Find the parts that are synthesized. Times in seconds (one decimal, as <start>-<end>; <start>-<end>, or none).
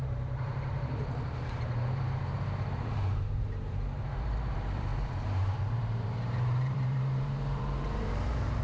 0.0-8.6